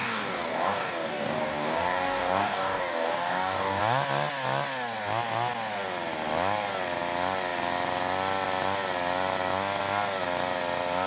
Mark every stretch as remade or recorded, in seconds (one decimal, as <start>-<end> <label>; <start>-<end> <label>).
0.0-3.8 remade; 3.8-11.1 recorded